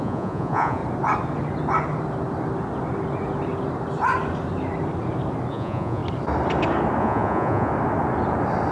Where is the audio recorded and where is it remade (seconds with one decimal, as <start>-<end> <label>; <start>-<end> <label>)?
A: 0.0-0.8 remade; 0.8-5.5 recorded; 5.5-6.0 remade; 6.0-7.0 recorded; 7.0-7.7 remade; 7.7-8.7 recorded